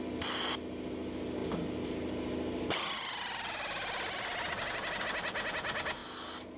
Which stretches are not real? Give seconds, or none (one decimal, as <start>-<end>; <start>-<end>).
none